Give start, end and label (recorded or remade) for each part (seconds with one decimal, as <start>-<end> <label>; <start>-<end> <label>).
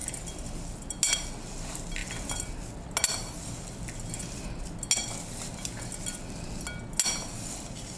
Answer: 0.0-8.0 recorded